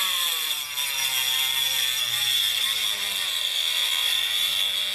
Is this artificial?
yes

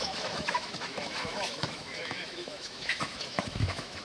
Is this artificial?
yes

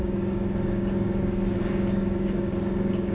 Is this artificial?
yes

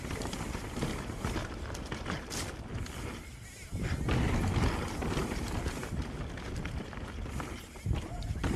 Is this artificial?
no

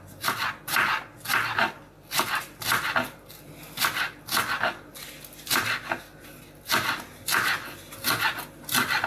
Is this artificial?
no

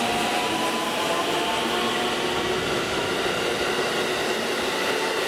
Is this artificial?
no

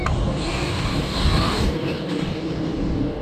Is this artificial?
yes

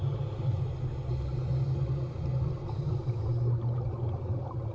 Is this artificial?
no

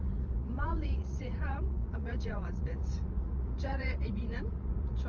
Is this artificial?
yes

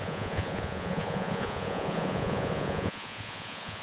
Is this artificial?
yes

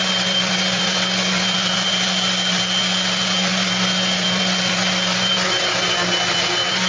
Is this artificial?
no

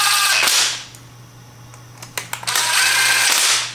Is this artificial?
no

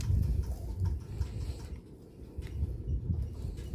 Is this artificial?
no